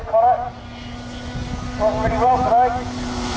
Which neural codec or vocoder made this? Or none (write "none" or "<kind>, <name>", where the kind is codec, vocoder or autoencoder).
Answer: none